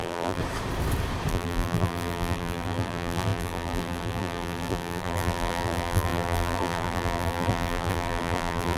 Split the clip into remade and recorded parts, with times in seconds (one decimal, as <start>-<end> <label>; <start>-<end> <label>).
0.0-0.4 remade; 0.4-1.3 recorded; 1.3-8.8 remade

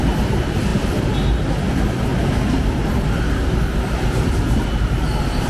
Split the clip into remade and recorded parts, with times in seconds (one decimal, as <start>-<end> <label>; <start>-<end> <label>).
0.0-5.5 recorded

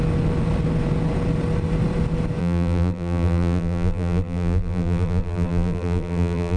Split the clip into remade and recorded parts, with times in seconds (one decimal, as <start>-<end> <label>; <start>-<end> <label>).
0.0-2.4 recorded; 2.4-6.6 remade

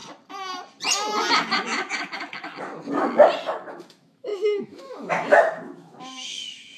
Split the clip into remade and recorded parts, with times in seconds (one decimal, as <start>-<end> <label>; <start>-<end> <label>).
0.0-3.7 recorded; 3.7-6.8 remade

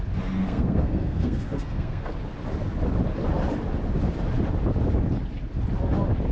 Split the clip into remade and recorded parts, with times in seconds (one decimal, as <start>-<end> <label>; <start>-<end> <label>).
0.0-0.4 recorded; 0.4-2.1 remade; 2.1-6.3 recorded

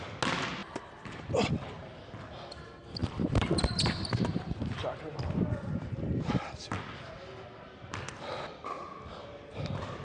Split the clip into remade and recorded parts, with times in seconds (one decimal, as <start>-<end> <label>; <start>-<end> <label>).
0.0-0.6 recorded; 0.6-1.3 remade; 1.3-3.0 recorded; 3.0-5.1 remade; 5.1-10.0 recorded

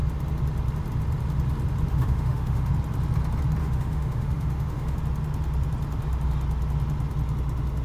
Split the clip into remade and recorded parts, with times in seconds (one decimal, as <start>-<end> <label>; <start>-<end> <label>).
0.0-1.9 recorded; 1.9-2.7 remade; 2.7-3.6 recorded; 3.6-5.0 remade; 5.0-7.8 recorded

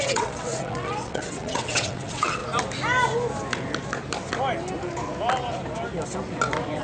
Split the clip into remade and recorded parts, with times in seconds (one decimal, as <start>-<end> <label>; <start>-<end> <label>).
0.0-2.4 remade; 2.4-6.8 recorded